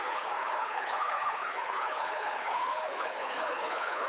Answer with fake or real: fake